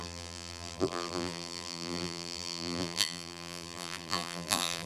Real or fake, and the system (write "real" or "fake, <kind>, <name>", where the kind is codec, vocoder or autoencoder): fake, vocoder, BigVGAN v2